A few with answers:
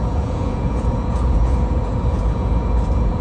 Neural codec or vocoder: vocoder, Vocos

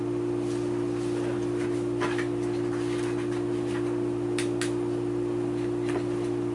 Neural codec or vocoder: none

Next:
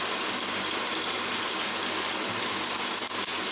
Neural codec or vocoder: none